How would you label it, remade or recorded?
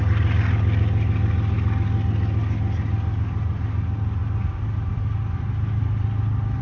recorded